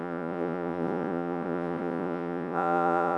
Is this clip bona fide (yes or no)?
no